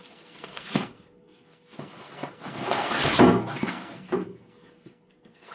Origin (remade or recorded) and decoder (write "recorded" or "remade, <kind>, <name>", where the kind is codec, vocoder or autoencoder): remade, codec, SNAC